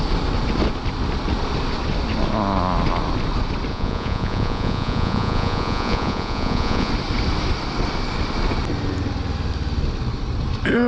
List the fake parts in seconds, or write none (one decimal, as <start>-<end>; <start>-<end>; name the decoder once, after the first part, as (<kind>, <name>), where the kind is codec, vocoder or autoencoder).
3.7-6.9 (vocoder, Vocos)